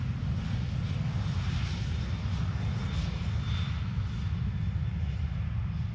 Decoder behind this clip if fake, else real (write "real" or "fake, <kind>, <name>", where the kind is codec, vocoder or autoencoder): real